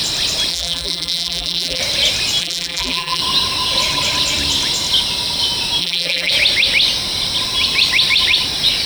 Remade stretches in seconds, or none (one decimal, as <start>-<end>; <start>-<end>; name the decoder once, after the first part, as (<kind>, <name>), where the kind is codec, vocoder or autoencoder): 0.5-1.8 (vocoder, BigVGAN v2); 2.4-3.2; 5.8-6.3